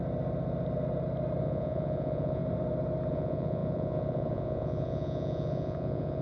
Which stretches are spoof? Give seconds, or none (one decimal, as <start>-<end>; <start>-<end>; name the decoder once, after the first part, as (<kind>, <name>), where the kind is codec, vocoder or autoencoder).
1.4-2.4 (vocoder, Vocos); 3.1-6.2